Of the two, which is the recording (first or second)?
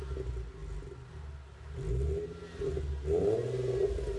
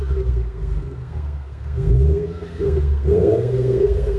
first